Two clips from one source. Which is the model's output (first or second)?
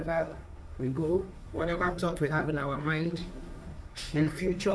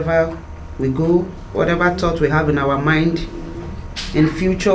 first